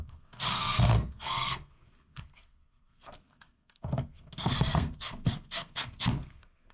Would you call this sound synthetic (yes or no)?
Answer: yes